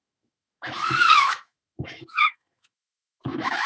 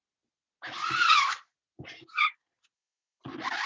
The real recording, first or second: second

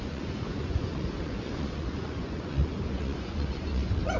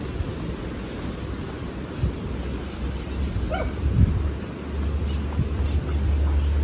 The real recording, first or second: second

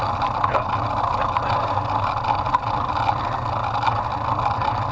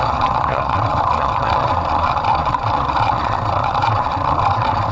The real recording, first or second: first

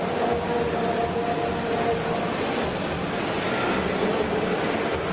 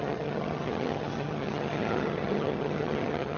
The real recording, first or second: first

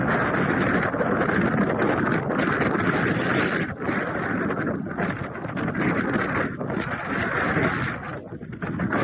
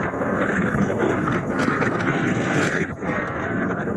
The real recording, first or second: first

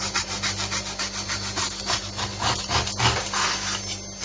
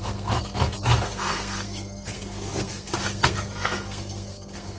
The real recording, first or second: first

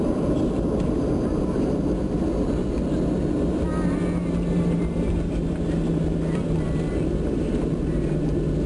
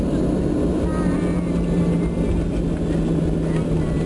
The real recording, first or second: second